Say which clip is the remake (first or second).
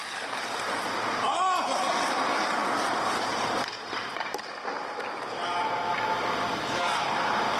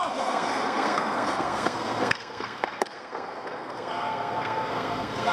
second